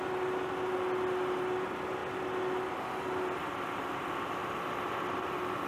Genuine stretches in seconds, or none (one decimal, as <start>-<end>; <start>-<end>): 0.0-5.7